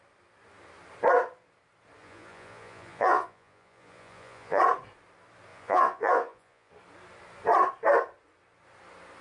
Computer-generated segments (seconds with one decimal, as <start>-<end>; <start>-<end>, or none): 2.0-4.6; 5.5-6.7